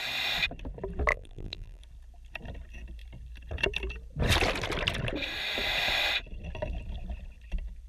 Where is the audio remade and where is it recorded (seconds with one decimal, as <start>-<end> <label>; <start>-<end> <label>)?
0.0-1.1 recorded; 1.1-1.8 remade; 1.8-7.9 recorded